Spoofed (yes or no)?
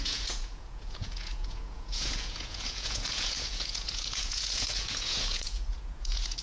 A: yes